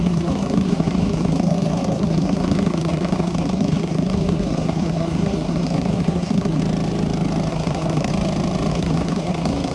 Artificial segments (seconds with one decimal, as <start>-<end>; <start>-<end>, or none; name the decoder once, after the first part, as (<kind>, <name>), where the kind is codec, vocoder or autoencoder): 0.0-6.6 (codec, SNAC); 7.5-8.1; 8.7-9.7